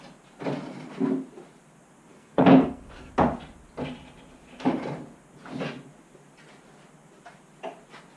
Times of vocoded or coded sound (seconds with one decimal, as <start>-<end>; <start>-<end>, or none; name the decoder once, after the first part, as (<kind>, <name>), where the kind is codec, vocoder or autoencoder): 2.1-3.1 (codec, SNAC)